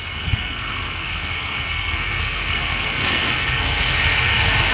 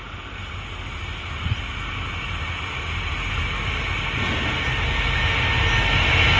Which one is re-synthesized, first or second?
first